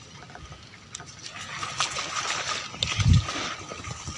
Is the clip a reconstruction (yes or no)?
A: no